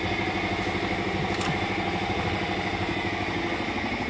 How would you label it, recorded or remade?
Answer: recorded